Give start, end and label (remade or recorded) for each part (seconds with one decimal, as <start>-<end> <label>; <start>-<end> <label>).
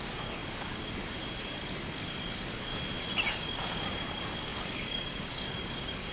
0.0-2.7 remade; 2.7-3.3 recorded; 3.3-6.1 remade